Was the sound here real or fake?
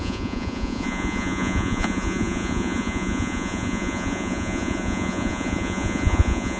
fake